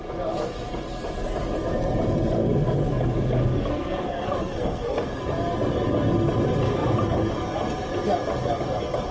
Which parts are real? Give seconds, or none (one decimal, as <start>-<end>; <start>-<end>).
0.0-3.6; 5.2-9.1